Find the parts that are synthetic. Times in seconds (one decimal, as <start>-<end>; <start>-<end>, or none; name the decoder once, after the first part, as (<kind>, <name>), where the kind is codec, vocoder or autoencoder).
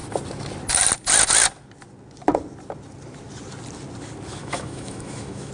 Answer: 4.4-5.5 (autoencoder, DAC-VAE)